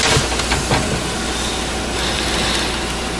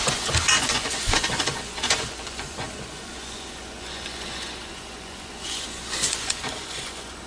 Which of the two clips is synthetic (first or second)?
second